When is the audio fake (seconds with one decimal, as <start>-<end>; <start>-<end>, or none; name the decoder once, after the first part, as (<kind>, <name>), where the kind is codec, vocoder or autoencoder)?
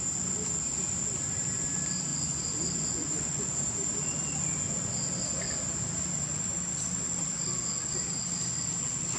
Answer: 2.1-3.4 (vocoder, Vocos)